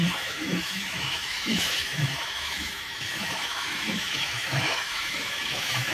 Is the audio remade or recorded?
remade